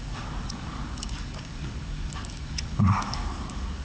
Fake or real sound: fake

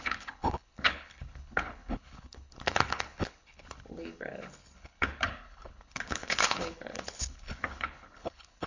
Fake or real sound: fake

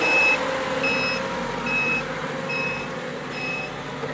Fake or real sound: real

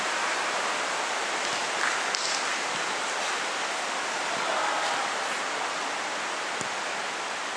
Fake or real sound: real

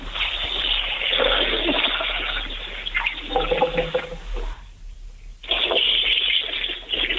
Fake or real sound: real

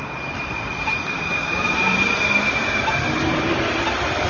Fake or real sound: fake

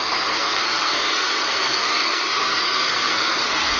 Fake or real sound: fake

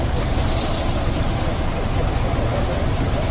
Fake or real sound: real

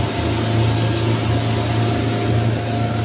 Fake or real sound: real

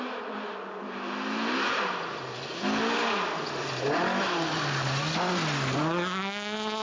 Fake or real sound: real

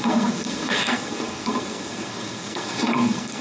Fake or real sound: fake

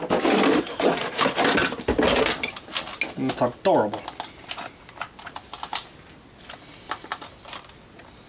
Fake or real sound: real